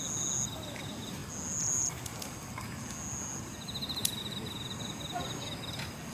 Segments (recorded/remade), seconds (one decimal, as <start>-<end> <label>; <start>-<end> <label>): 0.0-6.1 recorded